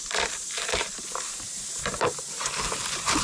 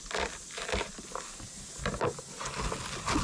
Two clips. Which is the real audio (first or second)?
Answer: second